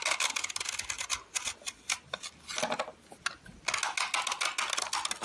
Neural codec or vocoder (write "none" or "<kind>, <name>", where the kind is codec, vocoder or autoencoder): none